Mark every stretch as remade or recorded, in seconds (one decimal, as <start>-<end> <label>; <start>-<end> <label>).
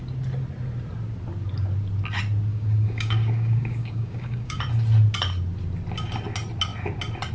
0.0-2.5 recorded; 2.5-4.6 remade; 4.6-7.3 recorded